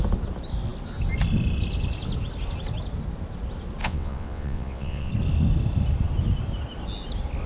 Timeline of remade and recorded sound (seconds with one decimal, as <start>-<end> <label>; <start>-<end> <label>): 0.0-3.8 recorded; 3.8-5.1 remade; 5.1-7.5 recorded

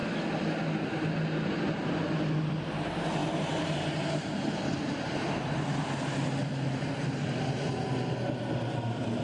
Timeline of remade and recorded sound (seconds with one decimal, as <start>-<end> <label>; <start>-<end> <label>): 0.0-3.2 recorded; 3.2-5.2 remade; 5.2-9.2 recorded

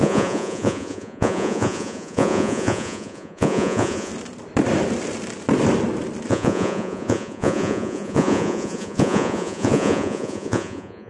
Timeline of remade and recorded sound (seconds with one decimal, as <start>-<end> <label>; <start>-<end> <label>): 0.0-4.1 remade; 4.1-6.3 recorded; 6.3-11.1 remade

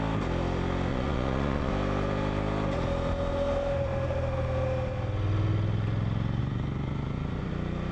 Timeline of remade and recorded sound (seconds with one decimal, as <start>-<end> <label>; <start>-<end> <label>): 0.0-0.9 recorded; 0.9-1.7 remade; 1.7-6.4 recorded; 6.4-7.5 remade; 7.5-7.9 recorded

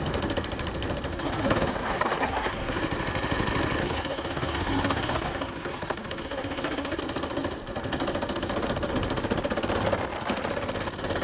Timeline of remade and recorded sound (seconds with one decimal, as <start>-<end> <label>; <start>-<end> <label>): 0.0-1.1 recorded; 1.1-2.8 remade; 2.8-3.8 recorded; 3.8-7.0 remade; 7.0-11.2 recorded